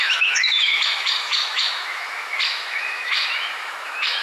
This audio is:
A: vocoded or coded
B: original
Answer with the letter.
A